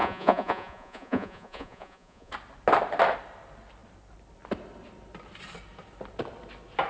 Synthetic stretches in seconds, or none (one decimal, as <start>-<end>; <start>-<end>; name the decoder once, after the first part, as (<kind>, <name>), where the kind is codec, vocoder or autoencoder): 0.0-2.3 (vocoder, Vocos)

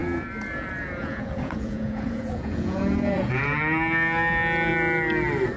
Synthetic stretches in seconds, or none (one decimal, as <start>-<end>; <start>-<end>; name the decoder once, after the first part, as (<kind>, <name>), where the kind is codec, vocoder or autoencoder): 0.0-3.4 (vocoder, Vocos)

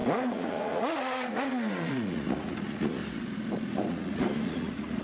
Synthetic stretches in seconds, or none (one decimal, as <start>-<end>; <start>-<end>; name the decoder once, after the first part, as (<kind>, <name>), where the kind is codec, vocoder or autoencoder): 0.0-3.0 (vocoder, Vocos); 3.9-5.0

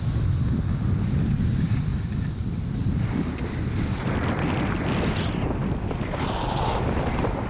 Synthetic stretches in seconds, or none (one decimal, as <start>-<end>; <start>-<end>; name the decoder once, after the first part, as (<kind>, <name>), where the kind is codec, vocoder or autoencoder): none

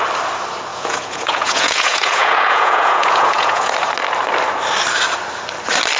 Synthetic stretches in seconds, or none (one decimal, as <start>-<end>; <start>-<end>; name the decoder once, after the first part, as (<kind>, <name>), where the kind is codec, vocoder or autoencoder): 0.7-3.7 (vocoder, Vocos)

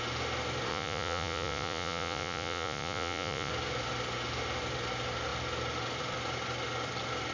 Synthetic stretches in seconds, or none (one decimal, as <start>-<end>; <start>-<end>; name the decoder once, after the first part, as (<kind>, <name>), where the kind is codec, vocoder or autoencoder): 0.7-3.5 (vocoder, Vocos)